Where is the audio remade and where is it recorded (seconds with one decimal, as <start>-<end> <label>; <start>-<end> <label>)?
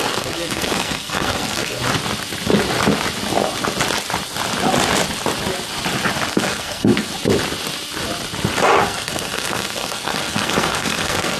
0.0-1.8 remade; 1.8-6.3 recorded; 6.3-7.1 remade; 7.1-8.8 recorded; 8.8-11.4 remade